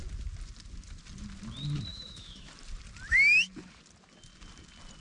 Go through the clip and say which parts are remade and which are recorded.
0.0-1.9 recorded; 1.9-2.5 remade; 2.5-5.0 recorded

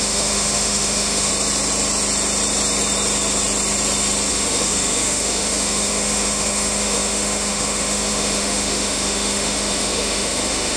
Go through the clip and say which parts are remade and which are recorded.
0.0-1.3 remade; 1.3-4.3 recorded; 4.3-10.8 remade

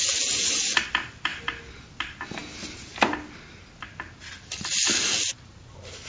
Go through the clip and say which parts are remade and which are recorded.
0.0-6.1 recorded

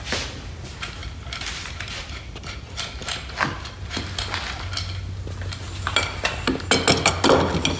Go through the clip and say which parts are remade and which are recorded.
0.0-7.8 recorded